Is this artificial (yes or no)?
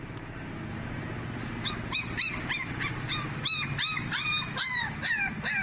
yes